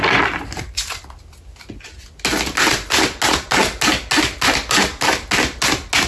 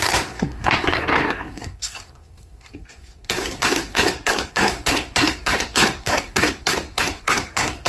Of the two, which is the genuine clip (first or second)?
first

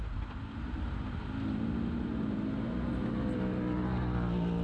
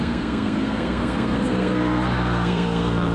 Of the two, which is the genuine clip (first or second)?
first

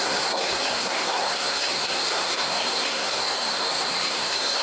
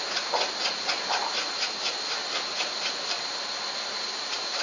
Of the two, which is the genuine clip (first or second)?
second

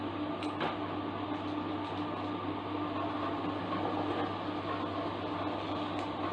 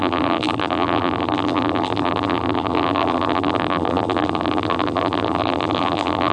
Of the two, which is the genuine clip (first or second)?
first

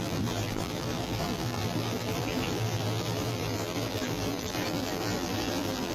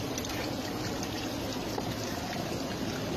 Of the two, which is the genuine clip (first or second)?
second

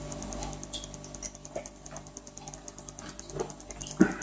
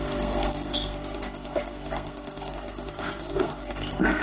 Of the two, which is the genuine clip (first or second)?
first